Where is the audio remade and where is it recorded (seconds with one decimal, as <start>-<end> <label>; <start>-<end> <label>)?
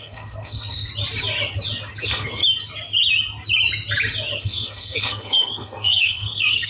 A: 0.0-0.9 remade; 0.9-2.0 recorded; 2.0-2.4 remade; 2.4-4.4 recorded; 4.4-6.7 remade